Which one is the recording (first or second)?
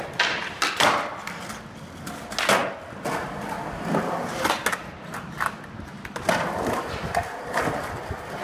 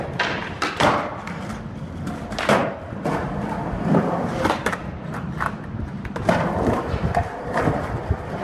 first